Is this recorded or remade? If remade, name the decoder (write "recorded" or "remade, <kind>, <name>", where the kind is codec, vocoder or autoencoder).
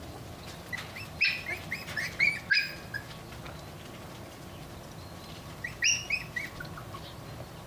recorded